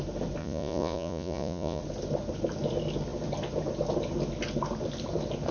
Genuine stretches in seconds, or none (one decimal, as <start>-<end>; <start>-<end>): 0.0-0.4; 1.8-5.5